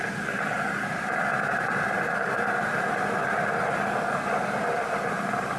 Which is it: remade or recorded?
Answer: recorded